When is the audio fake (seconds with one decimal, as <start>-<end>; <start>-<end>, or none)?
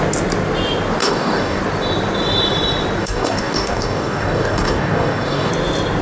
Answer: 1.0-1.6; 3.0-5.5